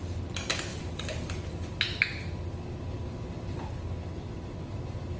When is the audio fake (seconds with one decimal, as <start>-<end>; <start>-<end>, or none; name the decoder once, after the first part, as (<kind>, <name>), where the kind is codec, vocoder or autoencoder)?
0.7-1.5 (vocoder, BigVGAN v2)